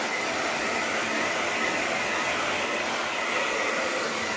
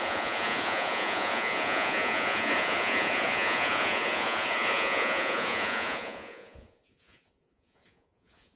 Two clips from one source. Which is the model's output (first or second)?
second